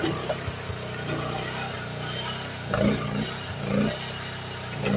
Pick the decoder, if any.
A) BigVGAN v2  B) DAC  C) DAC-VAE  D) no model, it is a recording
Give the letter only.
D